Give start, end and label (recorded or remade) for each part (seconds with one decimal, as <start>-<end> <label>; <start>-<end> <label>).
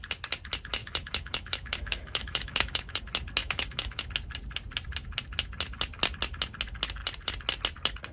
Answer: 0.0-0.8 recorded; 0.8-3.0 remade; 3.0-3.4 recorded; 3.4-4.1 remade; 4.1-8.1 recorded